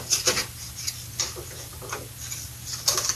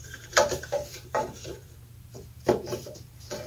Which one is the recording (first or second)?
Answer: first